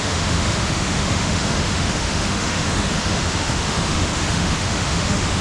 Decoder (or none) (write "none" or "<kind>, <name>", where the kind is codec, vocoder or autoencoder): autoencoder, DAC-VAE